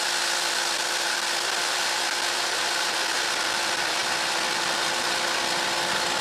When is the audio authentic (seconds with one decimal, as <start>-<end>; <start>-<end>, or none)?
0.0-6.2